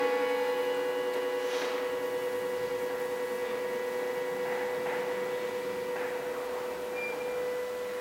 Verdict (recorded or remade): recorded